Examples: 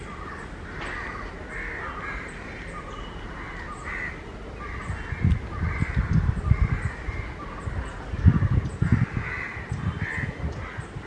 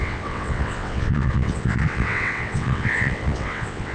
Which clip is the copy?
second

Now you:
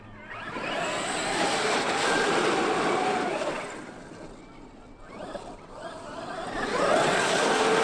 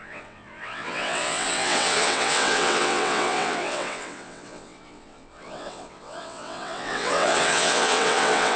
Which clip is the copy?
second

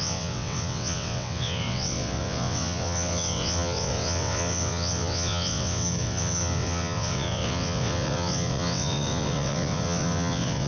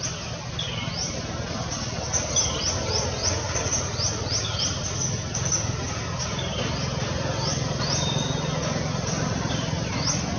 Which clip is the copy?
first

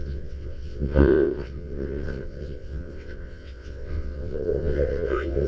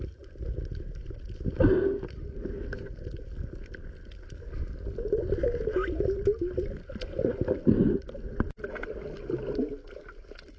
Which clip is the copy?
first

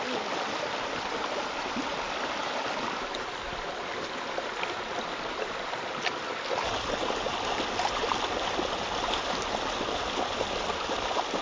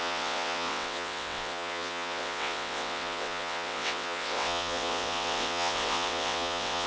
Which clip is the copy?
second